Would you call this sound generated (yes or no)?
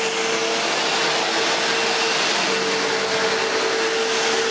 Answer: no